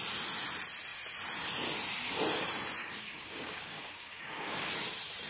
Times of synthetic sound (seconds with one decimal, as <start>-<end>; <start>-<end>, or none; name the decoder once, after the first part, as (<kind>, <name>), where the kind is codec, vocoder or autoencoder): 2.8-4.7 (codec, DAC)